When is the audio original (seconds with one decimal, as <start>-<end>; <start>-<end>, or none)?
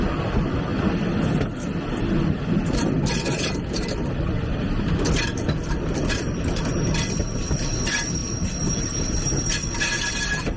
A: 0.0-10.6